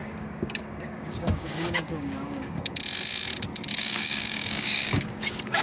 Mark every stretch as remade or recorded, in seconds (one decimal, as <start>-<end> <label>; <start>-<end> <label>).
0.0-2.8 remade; 2.8-3.7 recorded; 3.7-5.6 remade